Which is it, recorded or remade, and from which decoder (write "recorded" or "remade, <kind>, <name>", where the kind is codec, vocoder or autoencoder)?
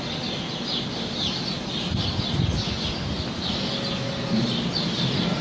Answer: recorded